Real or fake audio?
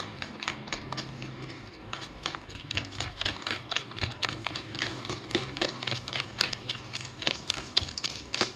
fake